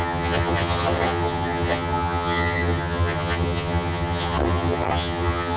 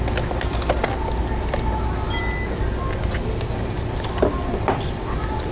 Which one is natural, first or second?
second